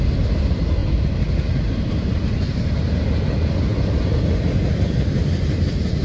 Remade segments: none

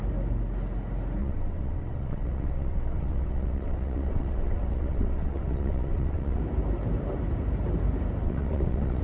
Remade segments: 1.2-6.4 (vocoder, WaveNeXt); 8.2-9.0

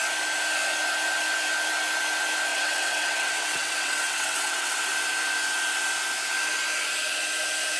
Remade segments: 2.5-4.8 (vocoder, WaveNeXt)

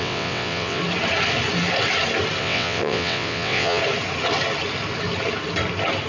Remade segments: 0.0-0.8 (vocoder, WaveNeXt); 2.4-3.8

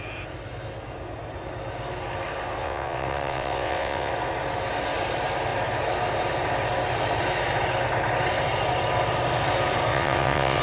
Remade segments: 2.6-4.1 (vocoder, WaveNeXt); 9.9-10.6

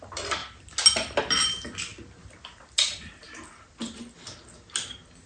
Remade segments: none

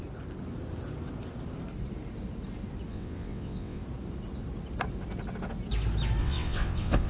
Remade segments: 2.9-3.8 (vocoder, WaveNeXt); 6.2-7.1

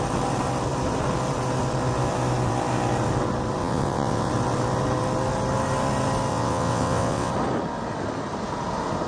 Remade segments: 3.6-4.3 (vocoder, WaveNeXt); 6.3-7.3